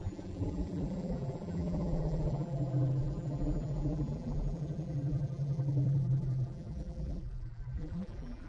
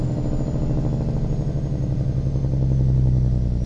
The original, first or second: second